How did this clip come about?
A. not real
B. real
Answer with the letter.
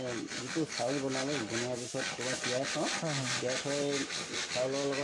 B